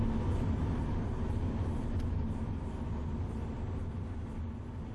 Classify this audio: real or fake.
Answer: real